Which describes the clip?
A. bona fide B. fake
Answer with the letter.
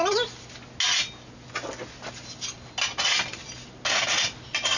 A